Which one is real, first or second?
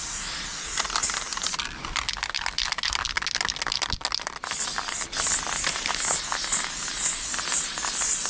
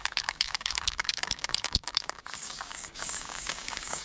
first